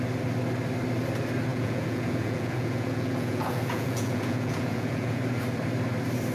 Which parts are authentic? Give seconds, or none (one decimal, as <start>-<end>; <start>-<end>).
0.0-1.5; 5.2-6.3